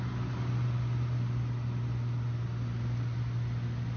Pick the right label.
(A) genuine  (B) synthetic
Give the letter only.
A